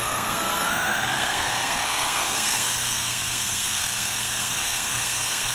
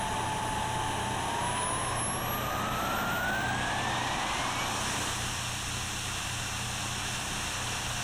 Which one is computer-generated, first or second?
first